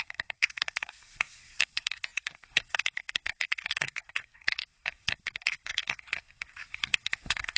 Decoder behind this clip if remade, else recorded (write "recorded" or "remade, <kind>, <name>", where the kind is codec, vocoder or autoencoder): remade, codec, SNAC